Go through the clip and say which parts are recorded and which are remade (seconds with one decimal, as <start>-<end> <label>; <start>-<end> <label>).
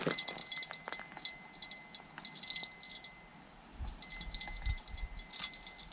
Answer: 0.0-5.9 recorded